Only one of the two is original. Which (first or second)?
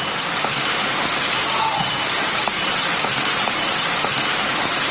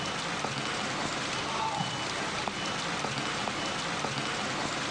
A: second